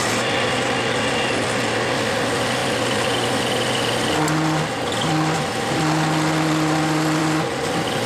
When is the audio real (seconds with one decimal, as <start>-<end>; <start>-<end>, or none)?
0.0-8.1